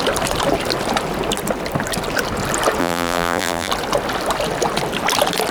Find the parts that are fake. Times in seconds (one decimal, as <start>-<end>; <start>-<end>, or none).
2.8-3.7